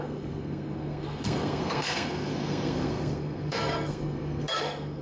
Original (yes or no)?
no